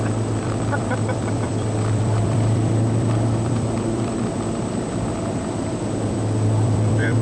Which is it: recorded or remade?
remade